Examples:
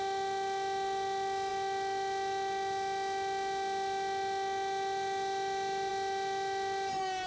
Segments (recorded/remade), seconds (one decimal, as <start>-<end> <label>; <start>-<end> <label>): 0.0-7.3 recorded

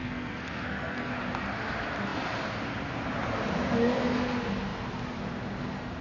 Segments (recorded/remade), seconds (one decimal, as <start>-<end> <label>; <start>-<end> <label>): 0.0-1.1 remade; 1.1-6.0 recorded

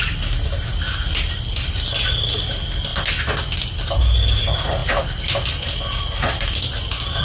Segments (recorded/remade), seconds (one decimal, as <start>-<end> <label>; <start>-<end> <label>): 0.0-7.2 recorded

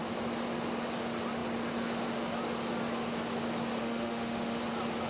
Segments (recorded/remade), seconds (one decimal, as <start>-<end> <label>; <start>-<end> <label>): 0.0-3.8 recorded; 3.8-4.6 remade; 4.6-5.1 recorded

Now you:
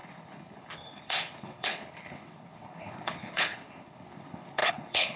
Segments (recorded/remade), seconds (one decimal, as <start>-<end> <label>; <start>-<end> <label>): 0.0-5.2 remade

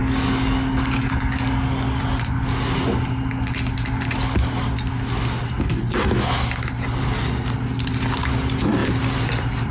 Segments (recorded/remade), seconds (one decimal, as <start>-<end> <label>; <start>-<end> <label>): 0.0-2.0 remade; 2.0-9.7 recorded

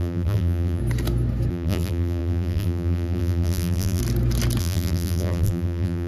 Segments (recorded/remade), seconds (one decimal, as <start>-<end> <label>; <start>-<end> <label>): 0.0-0.8 remade; 0.8-1.5 recorded; 1.5-4.0 remade; 4.0-4.6 recorded; 4.6-6.1 remade